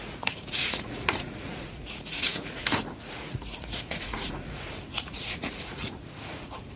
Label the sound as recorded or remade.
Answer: remade